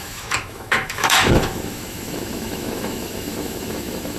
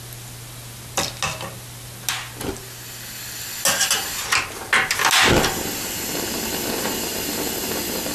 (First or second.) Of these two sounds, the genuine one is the second